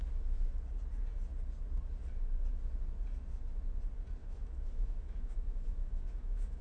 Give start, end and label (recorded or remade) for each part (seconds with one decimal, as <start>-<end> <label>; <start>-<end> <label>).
0.0-4.2 recorded; 4.2-6.6 remade